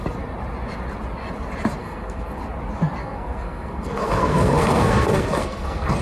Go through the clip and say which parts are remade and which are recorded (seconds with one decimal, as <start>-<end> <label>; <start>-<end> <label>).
0.0-1.8 recorded; 1.8-2.4 remade; 2.4-3.0 recorded; 3.0-6.0 remade